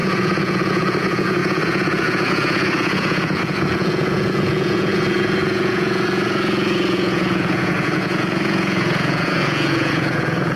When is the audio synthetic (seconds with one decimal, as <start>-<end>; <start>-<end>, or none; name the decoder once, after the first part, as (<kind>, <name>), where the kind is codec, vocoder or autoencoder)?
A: 0.0-10.6 (vocoder, Vocos)

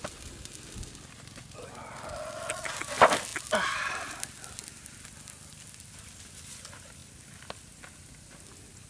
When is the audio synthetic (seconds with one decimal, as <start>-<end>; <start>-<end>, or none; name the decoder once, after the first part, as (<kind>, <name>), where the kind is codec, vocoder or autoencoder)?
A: none

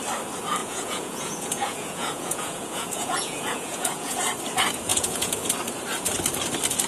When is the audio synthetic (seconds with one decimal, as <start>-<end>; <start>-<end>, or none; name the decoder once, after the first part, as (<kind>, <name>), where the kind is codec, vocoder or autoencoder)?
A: 0.6-4.2 (vocoder, Vocos); 4.9-5.5

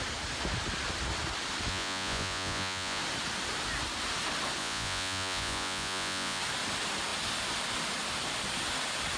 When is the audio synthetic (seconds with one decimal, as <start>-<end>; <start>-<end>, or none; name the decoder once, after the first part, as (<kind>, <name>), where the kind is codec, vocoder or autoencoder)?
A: 1.7-3.0 (vocoder, Vocos); 4.6-6.4

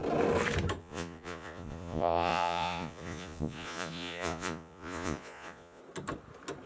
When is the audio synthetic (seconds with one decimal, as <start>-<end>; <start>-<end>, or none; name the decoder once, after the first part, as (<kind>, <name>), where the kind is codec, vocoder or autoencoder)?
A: 0.8-5.8 (vocoder, Vocos)